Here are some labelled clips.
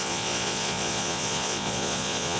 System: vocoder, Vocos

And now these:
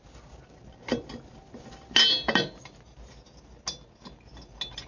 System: none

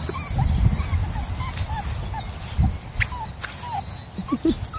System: none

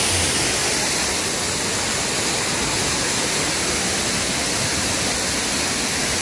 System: none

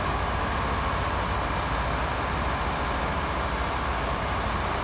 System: none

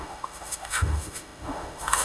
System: autoencoder, DAC-VAE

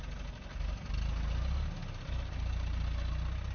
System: none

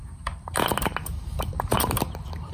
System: vocoder, BigVGAN v2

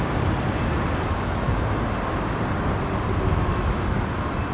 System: none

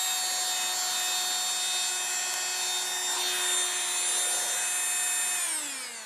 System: none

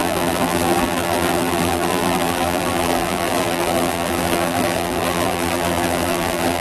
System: vocoder, BigVGAN v2